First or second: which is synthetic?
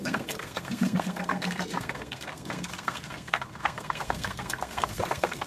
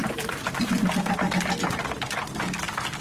first